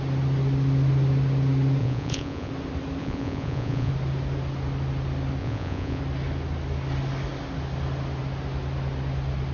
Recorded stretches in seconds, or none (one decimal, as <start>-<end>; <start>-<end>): 0.0-1.8; 2.5-3.0; 3.9-5.4; 6.0-9.5